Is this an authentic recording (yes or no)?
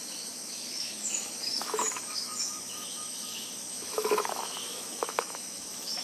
no